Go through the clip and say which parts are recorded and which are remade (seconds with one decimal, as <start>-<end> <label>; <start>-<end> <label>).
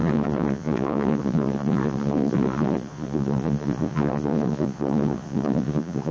0.0-6.1 remade